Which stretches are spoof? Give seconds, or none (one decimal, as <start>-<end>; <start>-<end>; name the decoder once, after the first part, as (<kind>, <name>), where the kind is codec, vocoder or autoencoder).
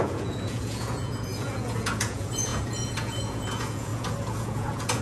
0.0-5.0 (vocoder, Vocos)